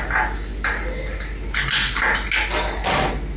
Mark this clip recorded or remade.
recorded